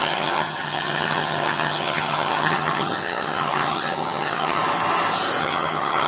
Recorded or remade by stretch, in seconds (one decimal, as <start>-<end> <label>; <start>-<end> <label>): 0.0-4.6 remade; 4.6-5.4 recorded; 5.4-6.1 remade